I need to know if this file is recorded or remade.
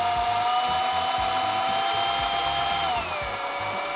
remade